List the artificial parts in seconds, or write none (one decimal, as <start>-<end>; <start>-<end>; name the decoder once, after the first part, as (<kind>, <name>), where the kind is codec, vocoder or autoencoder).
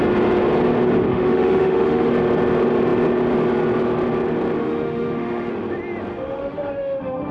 1.1-2.1 (autoencoder, DAC-VAE); 4.6-5.5; 6.1-7.3